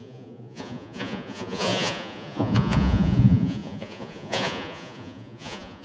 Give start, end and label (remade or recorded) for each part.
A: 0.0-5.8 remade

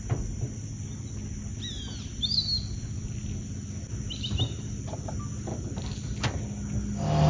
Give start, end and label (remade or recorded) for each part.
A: 0.0-7.3 recorded

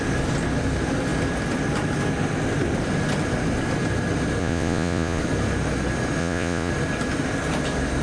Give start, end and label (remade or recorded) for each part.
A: 0.0-4.4 recorded; 4.4-5.2 remade; 5.2-6.2 recorded; 6.2-6.7 remade; 6.7-8.0 recorded

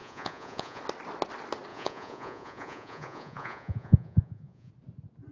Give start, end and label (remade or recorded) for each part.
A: 0.0-0.8 remade; 0.8-1.7 recorded; 1.7-4.7 remade; 4.7-5.3 recorded

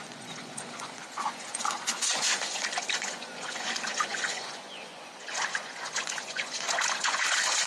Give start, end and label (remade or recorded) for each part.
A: 0.0-7.7 remade

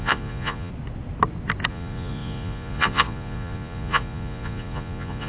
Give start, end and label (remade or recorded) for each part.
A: 0.0-0.7 remade; 0.7-1.7 recorded; 1.7-5.3 remade

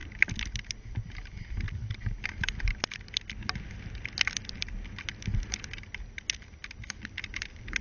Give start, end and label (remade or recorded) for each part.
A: 0.0-7.8 recorded

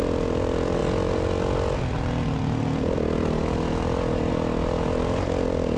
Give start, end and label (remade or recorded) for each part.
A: 0.0-5.8 recorded